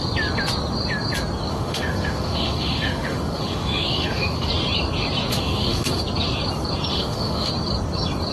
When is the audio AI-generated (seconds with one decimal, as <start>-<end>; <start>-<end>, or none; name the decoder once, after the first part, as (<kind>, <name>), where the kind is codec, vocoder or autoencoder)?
1.5-4.5 (autoencoder, DAC-VAE); 5.3-6.0; 6.9-7.5